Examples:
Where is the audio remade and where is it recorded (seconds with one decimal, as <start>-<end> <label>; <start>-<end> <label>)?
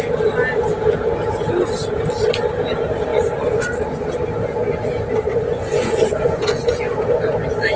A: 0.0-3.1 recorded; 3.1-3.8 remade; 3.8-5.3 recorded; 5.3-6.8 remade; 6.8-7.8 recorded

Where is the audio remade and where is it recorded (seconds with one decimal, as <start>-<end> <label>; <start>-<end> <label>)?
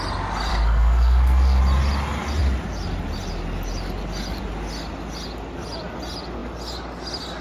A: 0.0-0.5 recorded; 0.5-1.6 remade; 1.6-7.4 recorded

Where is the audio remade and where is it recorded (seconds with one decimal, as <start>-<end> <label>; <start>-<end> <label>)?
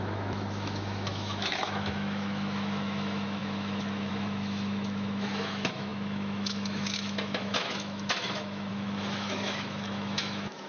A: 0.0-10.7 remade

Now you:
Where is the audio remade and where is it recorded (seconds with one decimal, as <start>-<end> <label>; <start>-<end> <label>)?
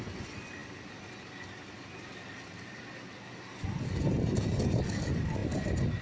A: 0.0-6.0 recorded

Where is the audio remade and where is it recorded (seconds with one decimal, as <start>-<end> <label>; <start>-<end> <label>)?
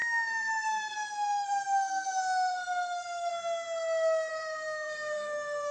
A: 0.0-3.3 remade; 3.3-4.3 recorded; 4.3-5.7 remade